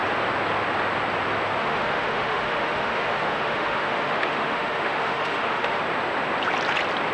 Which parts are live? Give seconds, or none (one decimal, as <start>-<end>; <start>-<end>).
0.0-1.6; 5.8-7.1